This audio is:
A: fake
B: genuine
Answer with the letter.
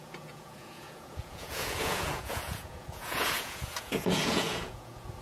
A